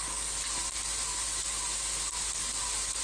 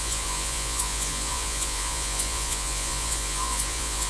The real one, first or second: first